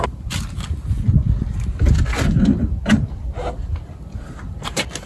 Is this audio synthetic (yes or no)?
no